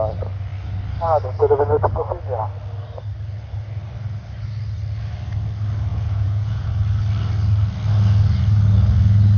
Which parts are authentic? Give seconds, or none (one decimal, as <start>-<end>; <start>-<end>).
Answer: 0.0-5.9; 6.7-9.4